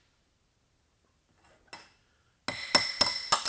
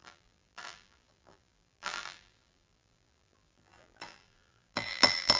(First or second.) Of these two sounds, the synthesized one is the second